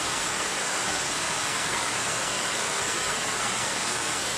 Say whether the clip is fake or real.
fake